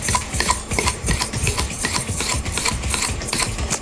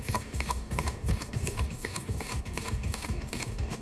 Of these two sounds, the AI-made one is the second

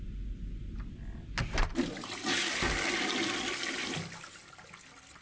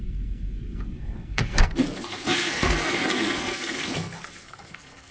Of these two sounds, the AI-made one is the second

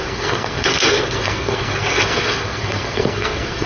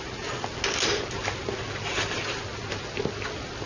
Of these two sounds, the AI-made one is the first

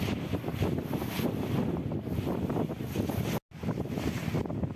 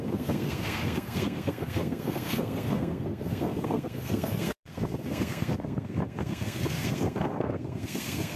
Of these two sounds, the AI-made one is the second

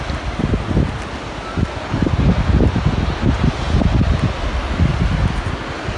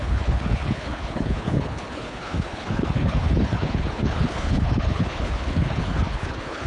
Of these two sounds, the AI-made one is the second